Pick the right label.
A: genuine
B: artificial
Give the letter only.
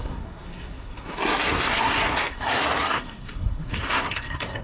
B